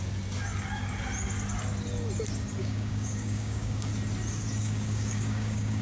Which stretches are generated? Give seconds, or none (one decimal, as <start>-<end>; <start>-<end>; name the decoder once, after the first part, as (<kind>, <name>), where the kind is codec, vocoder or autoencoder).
2.6-3.9 (codec, DAC); 4.6-5.8